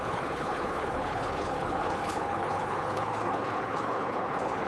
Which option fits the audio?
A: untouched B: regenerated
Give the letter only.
B